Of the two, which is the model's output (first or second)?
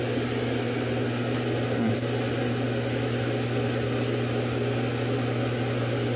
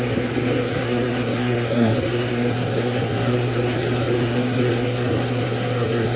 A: second